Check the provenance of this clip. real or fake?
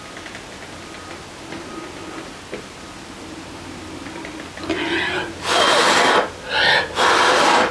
real